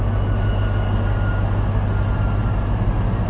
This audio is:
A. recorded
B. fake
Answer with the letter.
A